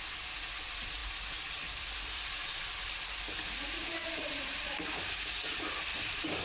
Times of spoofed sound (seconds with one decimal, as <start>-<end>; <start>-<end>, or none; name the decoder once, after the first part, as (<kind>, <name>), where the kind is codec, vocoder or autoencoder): 1.0-3.1 (vocoder, BigVGAN v2); 4.0-4.8; 5.9-6.4